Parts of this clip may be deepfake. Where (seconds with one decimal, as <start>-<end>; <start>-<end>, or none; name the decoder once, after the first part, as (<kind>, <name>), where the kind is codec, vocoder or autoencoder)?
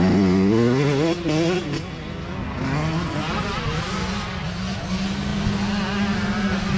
none